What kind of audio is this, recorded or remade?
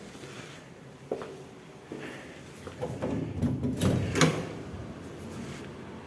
recorded